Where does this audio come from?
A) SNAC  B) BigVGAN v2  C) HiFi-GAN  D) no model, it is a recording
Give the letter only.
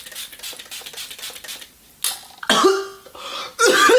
D